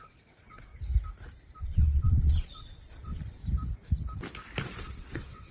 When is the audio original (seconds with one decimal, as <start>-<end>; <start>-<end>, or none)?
0.7-1.6; 3.4-4.8